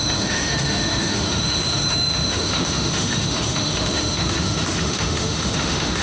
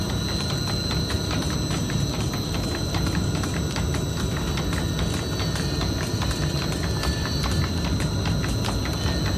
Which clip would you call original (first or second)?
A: second